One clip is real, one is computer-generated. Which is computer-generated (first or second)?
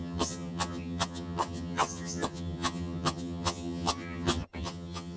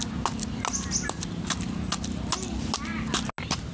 first